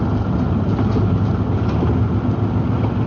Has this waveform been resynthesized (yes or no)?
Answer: no